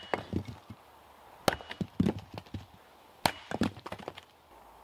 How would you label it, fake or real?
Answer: real